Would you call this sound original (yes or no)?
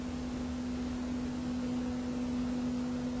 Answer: yes